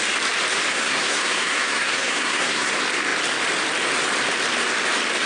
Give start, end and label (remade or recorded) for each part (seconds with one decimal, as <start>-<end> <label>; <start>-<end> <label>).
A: 0.0-0.7 recorded; 0.7-2.7 remade; 2.7-5.3 recorded